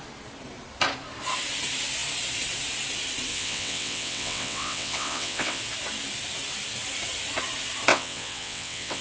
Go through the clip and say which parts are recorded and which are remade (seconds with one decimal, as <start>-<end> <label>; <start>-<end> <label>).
0.0-3.3 recorded; 3.3-5.6 remade; 5.6-7.9 recorded; 7.9-9.0 remade